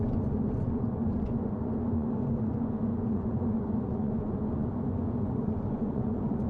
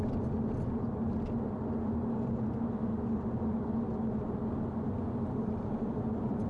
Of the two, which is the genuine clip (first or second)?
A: second